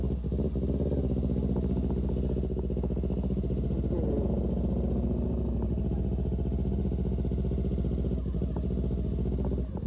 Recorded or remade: recorded